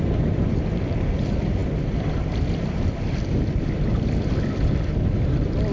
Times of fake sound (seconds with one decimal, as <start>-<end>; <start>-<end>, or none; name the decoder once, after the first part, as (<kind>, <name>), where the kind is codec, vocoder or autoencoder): none